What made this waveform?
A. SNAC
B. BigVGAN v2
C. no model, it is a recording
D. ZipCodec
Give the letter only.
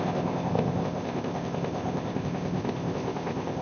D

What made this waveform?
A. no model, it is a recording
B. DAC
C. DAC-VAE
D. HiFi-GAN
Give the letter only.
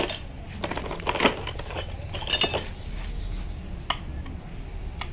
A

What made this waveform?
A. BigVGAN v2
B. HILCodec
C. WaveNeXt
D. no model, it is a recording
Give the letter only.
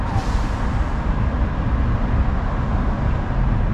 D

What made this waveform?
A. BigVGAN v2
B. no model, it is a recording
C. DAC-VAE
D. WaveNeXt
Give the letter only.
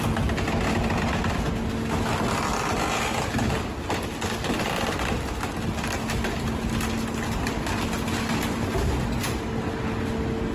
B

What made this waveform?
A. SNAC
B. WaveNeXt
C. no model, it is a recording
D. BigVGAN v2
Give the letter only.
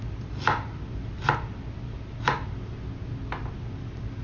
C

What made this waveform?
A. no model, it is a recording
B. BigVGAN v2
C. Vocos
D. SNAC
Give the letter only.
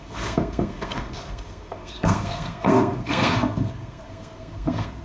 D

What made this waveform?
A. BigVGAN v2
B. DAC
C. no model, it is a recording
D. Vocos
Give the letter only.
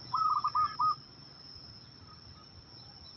C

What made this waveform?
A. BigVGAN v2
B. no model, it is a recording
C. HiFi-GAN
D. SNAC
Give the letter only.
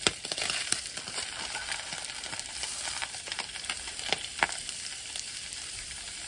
A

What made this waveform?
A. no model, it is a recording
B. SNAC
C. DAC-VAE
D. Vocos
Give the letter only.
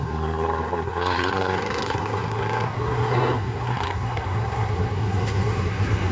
B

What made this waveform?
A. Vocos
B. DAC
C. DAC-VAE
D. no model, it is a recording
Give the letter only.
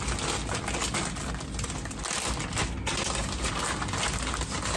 D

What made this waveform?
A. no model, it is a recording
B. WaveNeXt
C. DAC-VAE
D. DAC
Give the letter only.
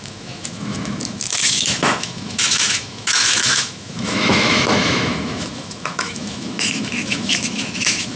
C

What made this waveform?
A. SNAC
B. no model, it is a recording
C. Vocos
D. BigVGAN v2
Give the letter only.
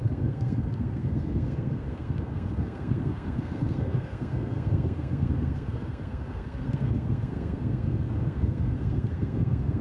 A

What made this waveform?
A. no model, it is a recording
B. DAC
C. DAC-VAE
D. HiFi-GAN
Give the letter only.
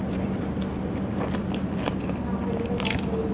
A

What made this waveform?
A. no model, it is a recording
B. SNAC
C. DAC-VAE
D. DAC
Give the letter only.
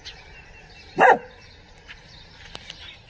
A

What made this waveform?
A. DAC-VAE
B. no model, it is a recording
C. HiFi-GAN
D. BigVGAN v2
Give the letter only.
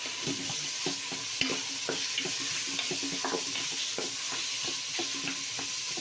B